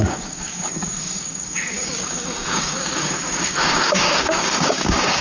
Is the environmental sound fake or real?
fake